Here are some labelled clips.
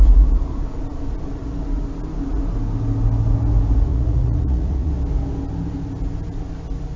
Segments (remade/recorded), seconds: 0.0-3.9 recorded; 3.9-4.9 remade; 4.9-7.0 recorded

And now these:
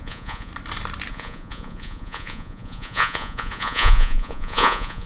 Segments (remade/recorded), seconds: 0.0-0.5 remade; 0.5-1.1 recorded; 1.1-5.1 remade

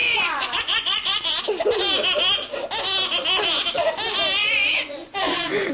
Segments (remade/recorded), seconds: 0.0-1.4 remade; 1.4-4.4 recorded; 4.4-5.7 remade

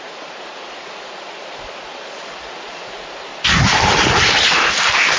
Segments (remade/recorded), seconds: 0.0-3.3 remade; 3.3-5.2 recorded

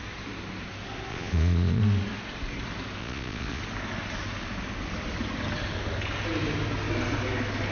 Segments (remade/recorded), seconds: 0.0-1.1 recorded; 1.1-1.8 remade; 1.8-3.0 recorded; 3.0-3.6 remade; 3.6-7.7 recorded

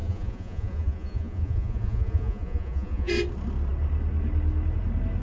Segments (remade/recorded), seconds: 0.0-3.1 remade; 3.1-5.2 recorded

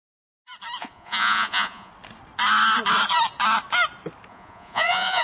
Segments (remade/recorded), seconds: 0.0-0.8 recorded; 0.8-1.9 remade; 1.9-4.3 recorded; 4.3-5.2 remade

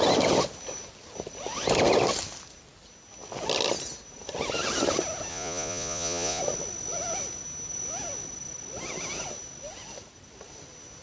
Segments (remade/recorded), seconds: 0.0-5.3 recorded; 5.3-6.4 remade; 6.4-11.0 recorded